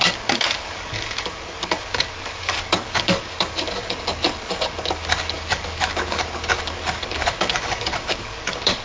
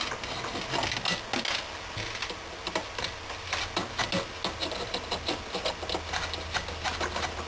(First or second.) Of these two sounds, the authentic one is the second